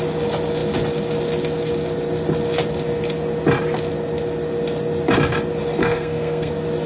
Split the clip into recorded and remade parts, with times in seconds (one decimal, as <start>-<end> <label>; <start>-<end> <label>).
0.0-5.8 recorded; 5.8-6.5 remade; 6.5-6.9 recorded